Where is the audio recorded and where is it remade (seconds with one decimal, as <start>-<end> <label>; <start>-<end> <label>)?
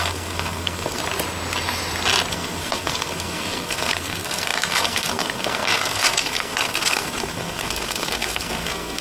0.0-1.0 remade; 1.0-2.3 recorded; 2.3-9.0 remade